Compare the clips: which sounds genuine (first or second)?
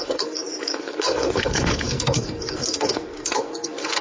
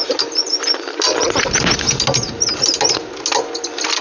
second